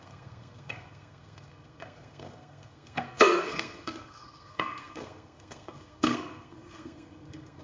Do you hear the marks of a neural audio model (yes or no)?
yes